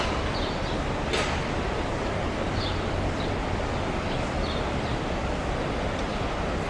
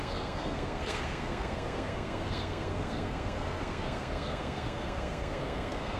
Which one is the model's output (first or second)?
second